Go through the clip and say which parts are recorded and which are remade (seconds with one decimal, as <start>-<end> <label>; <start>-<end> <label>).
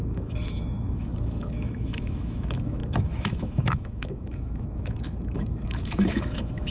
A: 0.0-6.7 remade